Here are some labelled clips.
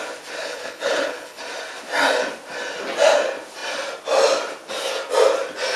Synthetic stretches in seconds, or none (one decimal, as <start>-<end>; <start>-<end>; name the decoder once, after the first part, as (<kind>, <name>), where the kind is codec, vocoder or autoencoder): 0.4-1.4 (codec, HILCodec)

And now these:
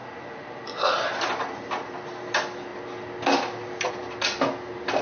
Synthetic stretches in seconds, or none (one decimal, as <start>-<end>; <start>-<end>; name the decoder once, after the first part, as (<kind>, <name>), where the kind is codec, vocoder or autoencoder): none

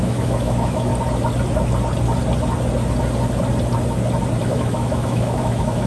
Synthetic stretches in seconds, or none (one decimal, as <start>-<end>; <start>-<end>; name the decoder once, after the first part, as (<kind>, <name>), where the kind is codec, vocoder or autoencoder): 0.0-0.9 (autoencoder, DAC-VAE); 4.4-5.9

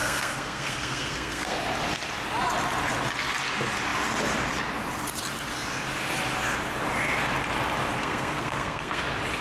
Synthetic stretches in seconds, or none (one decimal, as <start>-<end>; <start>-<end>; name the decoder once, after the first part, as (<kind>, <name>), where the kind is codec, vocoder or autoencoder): 0.0-1.6 (codec, SNAC); 8.0-9.0

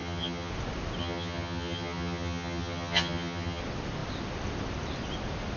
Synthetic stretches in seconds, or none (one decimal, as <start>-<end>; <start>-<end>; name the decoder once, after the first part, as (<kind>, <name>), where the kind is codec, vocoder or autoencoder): 0.0-0.5 (vocoder, HiFi-GAN); 1.0-3.6